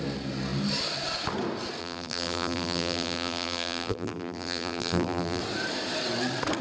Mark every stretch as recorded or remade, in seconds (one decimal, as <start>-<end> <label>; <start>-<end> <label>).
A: 0.0-1.8 recorded; 1.8-5.4 remade; 5.4-6.6 recorded